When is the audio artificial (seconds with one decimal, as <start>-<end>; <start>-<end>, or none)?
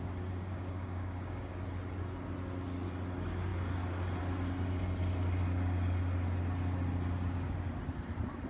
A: 0.5-1.5